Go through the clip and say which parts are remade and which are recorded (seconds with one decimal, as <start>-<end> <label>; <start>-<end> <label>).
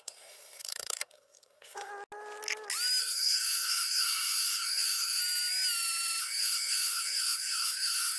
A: 0.0-1.9 remade; 1.9-3.0 recorded; 3.0-5.2 remade; 5.2-6.2 recorded; 6.2-8.2 remade